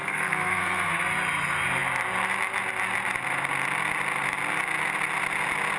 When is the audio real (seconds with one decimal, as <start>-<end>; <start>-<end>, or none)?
0.9-5.8